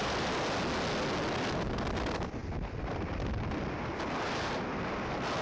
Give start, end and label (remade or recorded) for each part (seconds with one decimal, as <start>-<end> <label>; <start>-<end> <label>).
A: 0.0-5.4 recorded